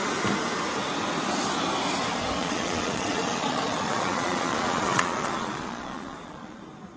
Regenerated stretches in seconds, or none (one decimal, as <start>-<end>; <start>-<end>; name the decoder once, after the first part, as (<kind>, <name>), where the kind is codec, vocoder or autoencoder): 2.4-6.6 (vocoder, Vocos)